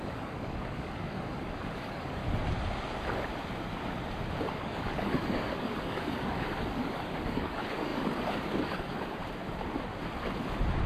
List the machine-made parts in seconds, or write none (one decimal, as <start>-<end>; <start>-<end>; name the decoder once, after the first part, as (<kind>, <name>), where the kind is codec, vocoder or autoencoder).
0.0-2.2 (codec, DAC); 4.5-9.2